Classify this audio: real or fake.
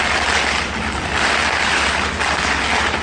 real